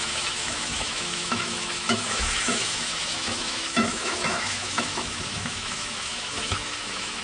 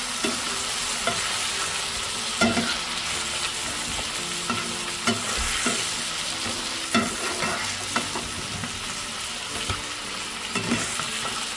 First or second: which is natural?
second